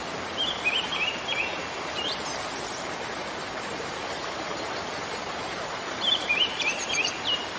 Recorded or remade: remade